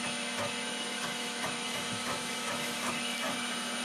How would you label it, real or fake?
fake